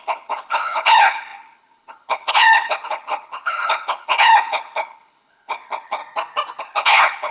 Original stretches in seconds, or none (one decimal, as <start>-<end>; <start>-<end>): 6.0-6.6